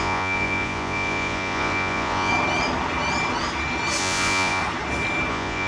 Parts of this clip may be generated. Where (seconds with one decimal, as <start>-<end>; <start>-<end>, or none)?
0.0-2.3; 4.0-4.6; 5.3-5.7